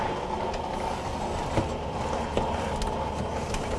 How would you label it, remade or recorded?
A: recorded